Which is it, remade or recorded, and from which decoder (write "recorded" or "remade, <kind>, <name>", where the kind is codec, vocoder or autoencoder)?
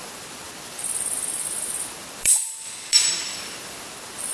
remade, vocoder, BigVGAN v2